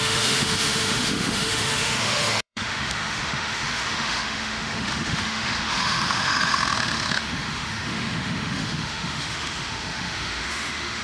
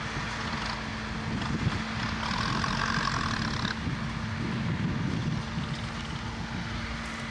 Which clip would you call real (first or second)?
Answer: second